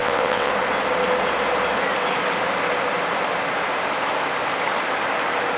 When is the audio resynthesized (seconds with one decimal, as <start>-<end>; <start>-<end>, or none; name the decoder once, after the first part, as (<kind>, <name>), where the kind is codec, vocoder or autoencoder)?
0.0-0.5 (vocoder, WaveNeXt)

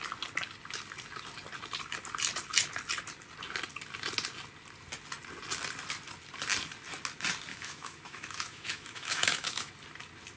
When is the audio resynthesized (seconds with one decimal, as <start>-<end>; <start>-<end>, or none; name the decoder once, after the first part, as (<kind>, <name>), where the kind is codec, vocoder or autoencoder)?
7.5-9.7 (autoencoder, DAC-VAE)

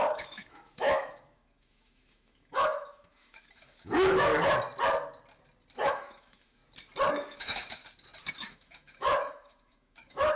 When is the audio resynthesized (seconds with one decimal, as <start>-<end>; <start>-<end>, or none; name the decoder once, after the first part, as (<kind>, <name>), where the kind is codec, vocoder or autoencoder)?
0.0-4.3 (autoencoder, DAC-VAE); 5.9-6.6; 7.1-7.8; 8.4-10.4

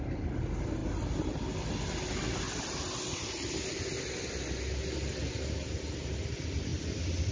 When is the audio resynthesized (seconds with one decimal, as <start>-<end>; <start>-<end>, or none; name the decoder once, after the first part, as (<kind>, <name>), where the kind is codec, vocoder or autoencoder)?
none

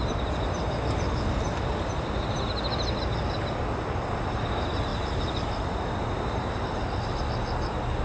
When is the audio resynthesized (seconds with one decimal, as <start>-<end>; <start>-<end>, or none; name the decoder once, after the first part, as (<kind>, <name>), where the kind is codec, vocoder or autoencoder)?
none

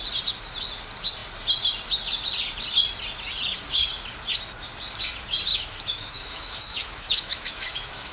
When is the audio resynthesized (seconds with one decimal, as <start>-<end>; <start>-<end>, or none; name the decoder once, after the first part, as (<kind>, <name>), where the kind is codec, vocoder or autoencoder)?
5.5-8.1 (autoencoder, DAC-VAE)

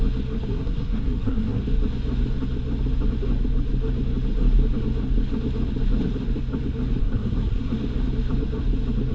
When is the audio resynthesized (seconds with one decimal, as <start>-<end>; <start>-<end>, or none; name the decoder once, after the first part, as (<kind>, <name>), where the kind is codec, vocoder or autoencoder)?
0.5-1.6 (codec, SNAC); 7.0-7.7

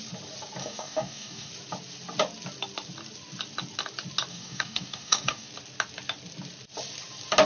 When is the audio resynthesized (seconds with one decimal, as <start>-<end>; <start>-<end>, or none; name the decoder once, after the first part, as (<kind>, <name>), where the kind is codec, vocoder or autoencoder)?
0.6-1.5 (codec, DAC); 4.3-5.5